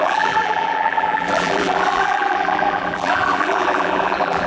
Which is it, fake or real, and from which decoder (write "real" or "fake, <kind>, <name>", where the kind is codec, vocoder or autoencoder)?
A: fake, vocoder, BigVGAN v2